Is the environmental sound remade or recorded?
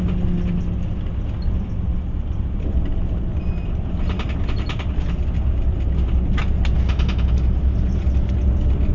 recorded